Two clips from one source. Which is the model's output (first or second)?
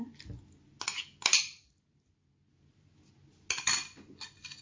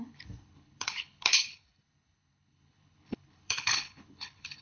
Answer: second